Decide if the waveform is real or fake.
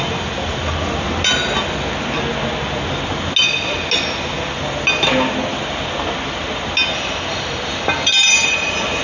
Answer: real